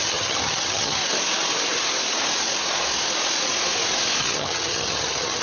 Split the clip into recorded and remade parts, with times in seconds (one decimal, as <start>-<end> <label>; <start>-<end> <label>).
0.0-1.0 remade; 1.0-4.2 recorded; 4.2-5.4 remade